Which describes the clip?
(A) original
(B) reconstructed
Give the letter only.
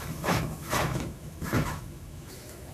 B